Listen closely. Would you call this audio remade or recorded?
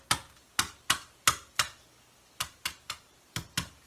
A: recorded